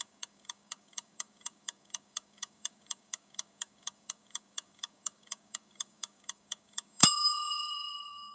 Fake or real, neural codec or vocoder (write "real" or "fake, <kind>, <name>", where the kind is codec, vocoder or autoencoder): fake, codec, DAC